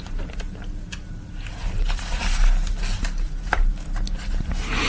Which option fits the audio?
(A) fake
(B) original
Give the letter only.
B